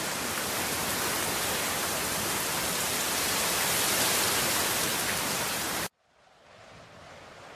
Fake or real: real